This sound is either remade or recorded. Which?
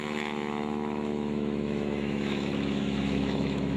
remade